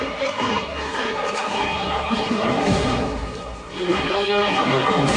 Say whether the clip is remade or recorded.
remade